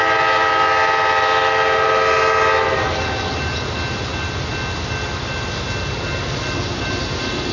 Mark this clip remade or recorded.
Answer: recorded